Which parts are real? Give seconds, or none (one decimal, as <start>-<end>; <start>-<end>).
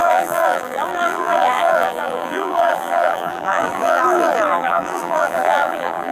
none